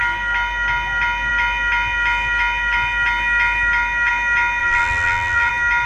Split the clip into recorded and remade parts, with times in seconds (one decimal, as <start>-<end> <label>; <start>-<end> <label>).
0.0-4.6 recorded; 4.6-5.5 remade; 5.5-5.9 recorded